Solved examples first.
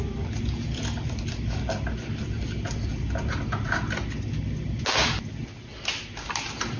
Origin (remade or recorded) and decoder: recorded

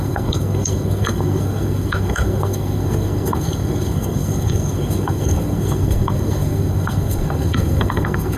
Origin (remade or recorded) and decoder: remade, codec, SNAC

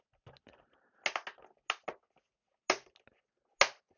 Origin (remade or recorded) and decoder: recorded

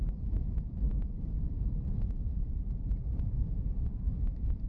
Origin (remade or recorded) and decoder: remade, vocoder, BigVGAN v2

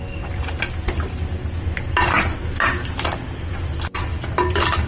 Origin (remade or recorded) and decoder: recorded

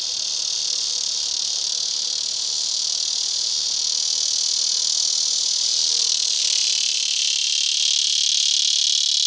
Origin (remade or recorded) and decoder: recorded